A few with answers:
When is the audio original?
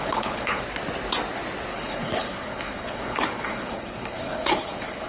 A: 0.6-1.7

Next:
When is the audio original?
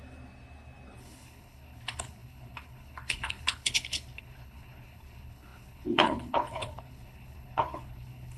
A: 0.0-1.0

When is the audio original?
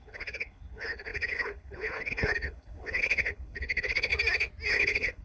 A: 4.1-4.7